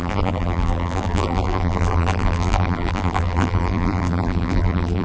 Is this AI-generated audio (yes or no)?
yes